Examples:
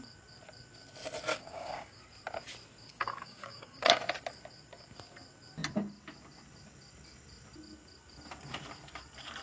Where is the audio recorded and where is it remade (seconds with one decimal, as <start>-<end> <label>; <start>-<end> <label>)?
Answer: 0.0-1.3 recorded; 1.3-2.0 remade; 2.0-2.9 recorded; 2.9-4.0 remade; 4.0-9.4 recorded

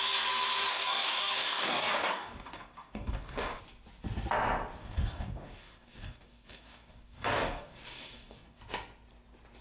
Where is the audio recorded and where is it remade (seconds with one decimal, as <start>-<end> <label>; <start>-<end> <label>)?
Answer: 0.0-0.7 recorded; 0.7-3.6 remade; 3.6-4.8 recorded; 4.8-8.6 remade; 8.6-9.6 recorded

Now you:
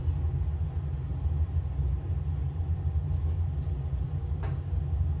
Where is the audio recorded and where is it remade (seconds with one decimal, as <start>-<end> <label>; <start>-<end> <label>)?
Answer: 0.0-4.2 recorded; 4.2-5.2 remade

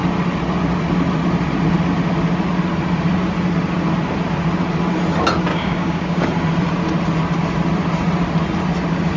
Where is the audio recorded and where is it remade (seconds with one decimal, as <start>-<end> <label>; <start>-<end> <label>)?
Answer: 0.0-5.5 recorded; 5.5-6.2 remade; 6.2-9.2 recorded

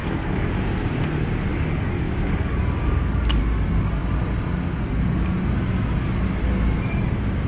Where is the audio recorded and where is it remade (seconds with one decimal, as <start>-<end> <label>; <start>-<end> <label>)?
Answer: 0.0-0.5 remade; 0.5-1.5 recorded; 1.5-3.4 remade; 3.4-7.5 recorded

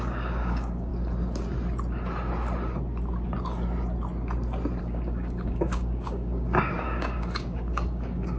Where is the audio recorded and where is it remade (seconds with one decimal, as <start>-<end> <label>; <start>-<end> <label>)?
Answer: 0.0-0.9 remade; 0.9-4.8 recorded; 4.8-8.4 remade

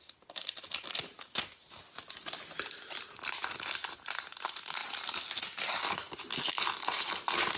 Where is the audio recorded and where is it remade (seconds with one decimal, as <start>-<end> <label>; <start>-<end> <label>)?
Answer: 0.0-7.6 recorded

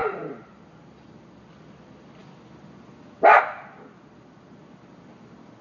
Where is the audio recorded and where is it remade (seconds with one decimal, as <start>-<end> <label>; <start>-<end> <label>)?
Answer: 0.0-5.6 recorded